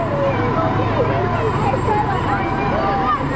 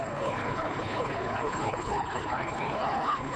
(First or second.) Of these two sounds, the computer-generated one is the second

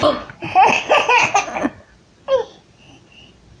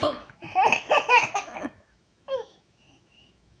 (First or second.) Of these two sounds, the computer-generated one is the second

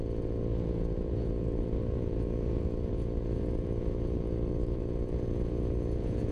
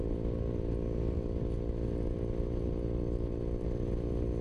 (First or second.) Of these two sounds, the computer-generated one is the first